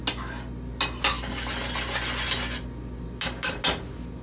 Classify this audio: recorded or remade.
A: recorded